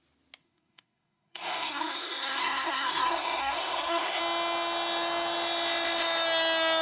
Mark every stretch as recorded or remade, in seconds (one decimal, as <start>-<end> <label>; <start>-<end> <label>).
0.0-0.4 recorded; 0.4-4.2 remade; 4.2-6.8 recorded